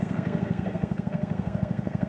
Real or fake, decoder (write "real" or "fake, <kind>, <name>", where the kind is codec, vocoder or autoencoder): fake, codec, SNAC